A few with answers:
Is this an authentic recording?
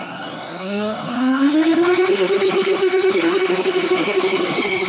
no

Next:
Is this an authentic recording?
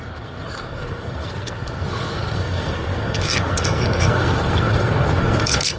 no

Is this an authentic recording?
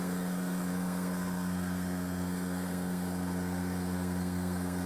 no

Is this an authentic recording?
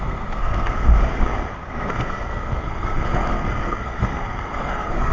no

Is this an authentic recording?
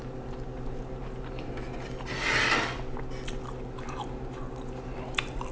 yes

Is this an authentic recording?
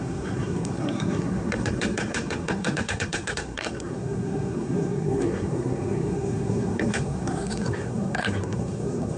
no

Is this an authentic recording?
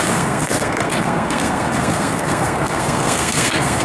no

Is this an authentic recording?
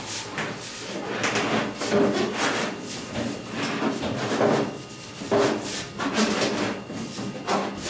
yes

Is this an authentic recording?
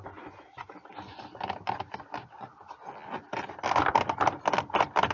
yes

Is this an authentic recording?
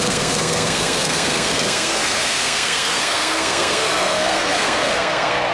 no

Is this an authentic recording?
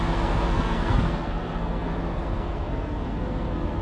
no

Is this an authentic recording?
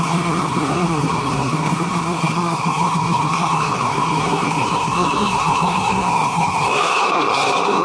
no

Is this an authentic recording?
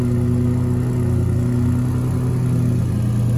yes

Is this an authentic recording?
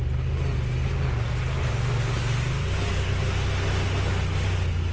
yes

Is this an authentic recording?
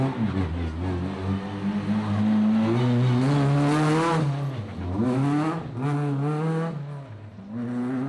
yes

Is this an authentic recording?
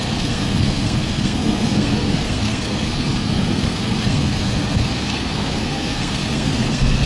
no